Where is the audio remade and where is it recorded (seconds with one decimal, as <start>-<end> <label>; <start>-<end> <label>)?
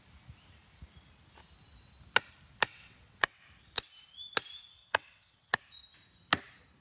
0.0-2.7 recorded; 2.7-3.4 remade; 3.4-4.8 recorded; 4.8-5.6 remade; 5.6-6.8 recorded